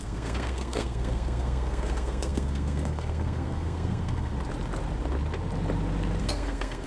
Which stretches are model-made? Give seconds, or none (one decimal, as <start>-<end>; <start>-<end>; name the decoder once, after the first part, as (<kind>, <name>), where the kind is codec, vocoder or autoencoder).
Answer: 0.0-4.3 (codec, SNAC); 6.2-6.9